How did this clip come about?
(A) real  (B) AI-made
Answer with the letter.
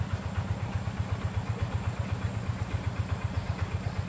B